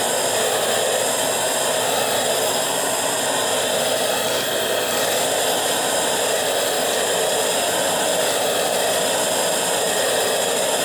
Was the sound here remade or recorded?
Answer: recorded